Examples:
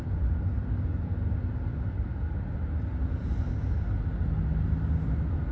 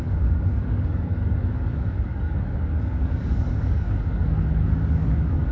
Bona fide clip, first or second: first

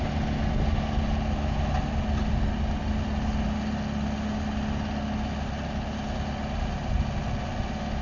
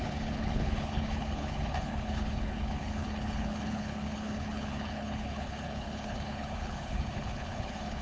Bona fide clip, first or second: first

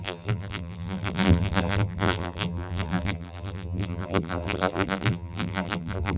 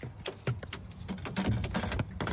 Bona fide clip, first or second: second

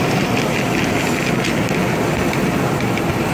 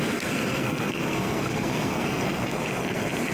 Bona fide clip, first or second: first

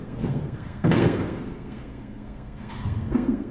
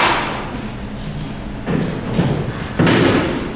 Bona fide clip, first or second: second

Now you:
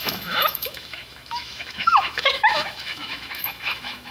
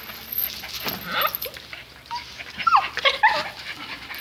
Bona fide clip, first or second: second